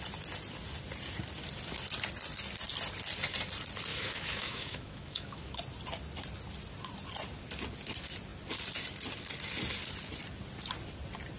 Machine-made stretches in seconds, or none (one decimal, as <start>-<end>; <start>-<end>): 3.9-5.6